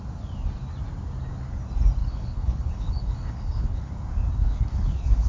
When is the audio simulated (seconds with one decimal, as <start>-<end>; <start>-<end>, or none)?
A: 2.0-3.9; 4.4-5.3